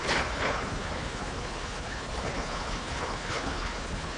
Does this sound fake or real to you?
fake